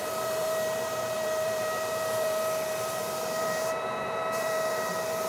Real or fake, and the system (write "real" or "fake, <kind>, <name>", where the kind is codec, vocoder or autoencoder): fake, vocoder, BigVGAN v2